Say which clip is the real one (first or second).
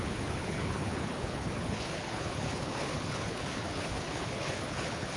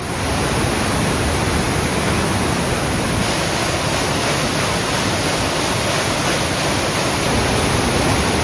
second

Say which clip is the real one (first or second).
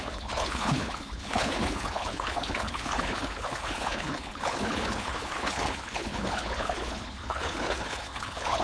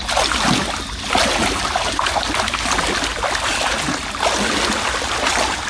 second